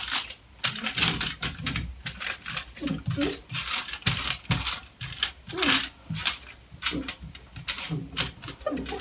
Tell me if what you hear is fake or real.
real